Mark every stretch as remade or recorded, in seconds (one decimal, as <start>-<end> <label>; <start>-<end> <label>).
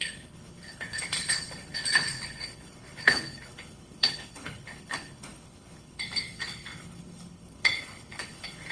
0.0-8.7 remade